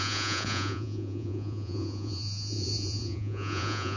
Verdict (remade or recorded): remade